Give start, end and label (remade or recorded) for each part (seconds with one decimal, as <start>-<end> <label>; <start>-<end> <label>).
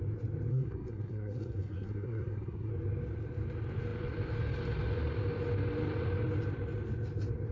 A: 0.0-0.5 recorded; 0.5-2.7 remade; 2.7-7.5 recorded